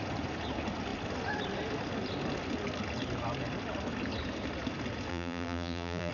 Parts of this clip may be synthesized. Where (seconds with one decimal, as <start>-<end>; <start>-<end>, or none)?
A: 5.1-6.1